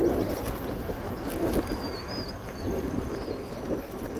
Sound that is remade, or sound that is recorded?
recorded